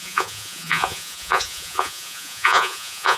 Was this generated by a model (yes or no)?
yes